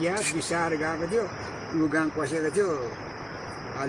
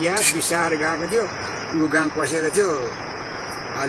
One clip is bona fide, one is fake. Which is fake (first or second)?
second